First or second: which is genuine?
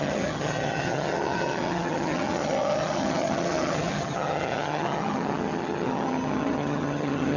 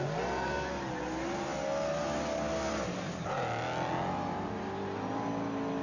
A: second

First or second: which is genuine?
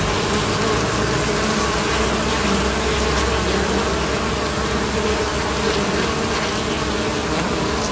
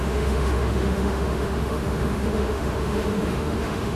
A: first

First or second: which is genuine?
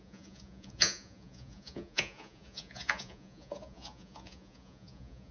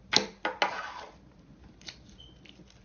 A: second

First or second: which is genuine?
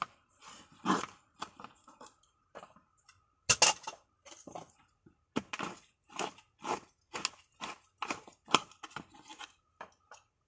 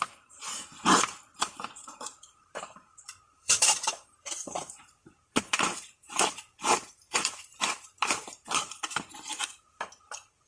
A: first